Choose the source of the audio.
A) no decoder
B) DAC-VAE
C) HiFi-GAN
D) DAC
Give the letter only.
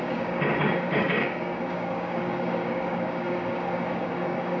D